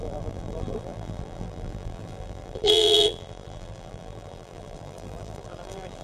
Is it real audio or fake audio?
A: fake